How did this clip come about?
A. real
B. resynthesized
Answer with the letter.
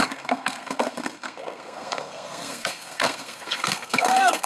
B